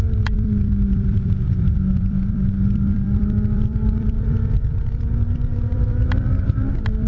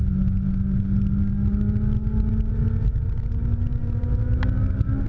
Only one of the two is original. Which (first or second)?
second